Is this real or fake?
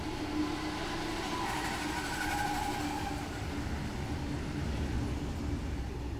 real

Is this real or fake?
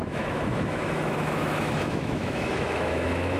fake